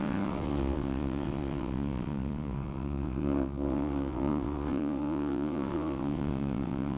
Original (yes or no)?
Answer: no